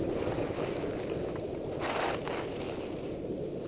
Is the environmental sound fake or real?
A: real